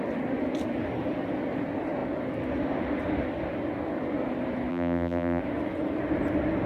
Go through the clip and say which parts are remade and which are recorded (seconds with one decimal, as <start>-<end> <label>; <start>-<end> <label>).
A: 0.0-4.7 recorded; 4.7-5.4 remade; 5.4-6.7 recorded

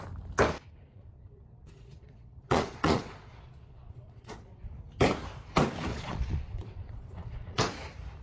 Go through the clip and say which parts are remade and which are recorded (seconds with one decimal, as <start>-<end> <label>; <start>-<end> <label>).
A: 0.0-0.9 recorded; 0.9-4.7 remade; 4.7-5.9 recorded; 5.9-7.6 remade; 7.6-8.2 recorded